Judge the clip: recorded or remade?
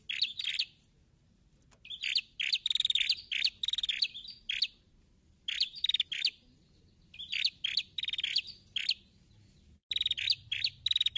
recorded